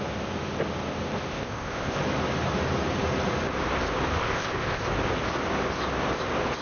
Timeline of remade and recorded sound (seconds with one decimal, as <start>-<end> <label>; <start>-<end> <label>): 0.0-1.3 recorded; 1.3-2.0 remade; 2.0-4.2 recorded; 4.2-4.8 remade; 4.8-6.6 recorded